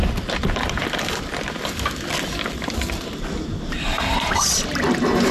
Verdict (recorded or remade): recorded